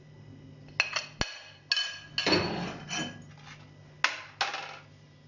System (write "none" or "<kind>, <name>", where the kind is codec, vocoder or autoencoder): none